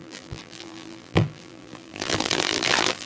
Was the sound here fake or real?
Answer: fake